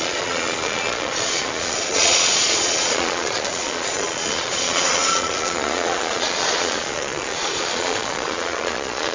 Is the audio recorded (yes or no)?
no